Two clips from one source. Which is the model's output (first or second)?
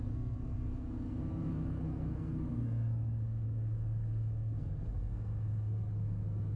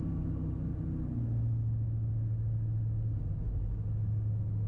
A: first